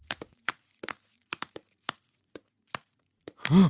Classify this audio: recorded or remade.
remade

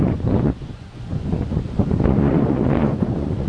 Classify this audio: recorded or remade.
remade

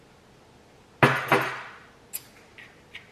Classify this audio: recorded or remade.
recorded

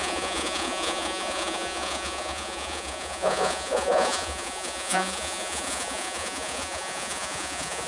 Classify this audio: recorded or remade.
remade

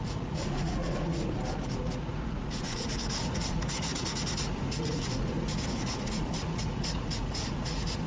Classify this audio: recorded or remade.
remade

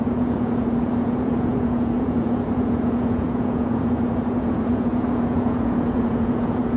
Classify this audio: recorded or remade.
remade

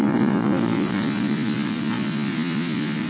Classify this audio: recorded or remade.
remade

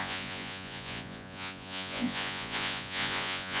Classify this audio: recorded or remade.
remade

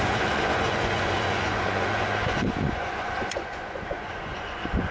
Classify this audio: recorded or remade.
remade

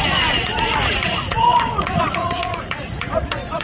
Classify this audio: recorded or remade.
remade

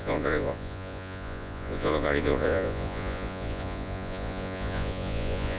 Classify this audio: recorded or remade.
remade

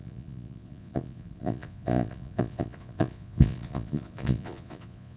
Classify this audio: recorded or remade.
remade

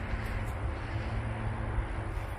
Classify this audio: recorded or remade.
recorded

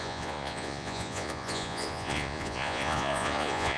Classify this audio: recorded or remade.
remade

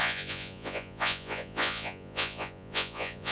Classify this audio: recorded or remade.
remade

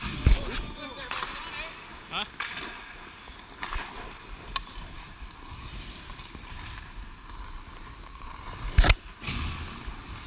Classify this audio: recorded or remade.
recorded